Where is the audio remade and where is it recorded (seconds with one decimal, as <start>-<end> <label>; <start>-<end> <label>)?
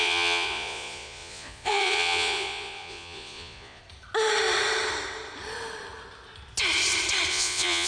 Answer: 0.0-3.8 remade; 3.8-7.3 recorded; 7.3-7.9 remade